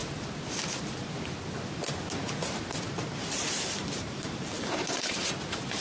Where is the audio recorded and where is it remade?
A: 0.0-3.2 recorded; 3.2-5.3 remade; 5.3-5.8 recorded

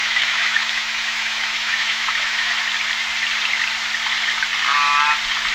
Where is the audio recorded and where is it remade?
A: 0.0-2.5 remade; 2.5-5.5 recorded